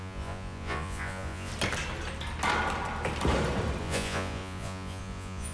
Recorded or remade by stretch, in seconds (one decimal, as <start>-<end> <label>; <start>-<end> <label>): 0.0-1.5 remade; 1.5-3.8 recorded; 3.8-5.5 remade